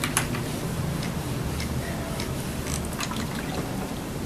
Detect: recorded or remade recorded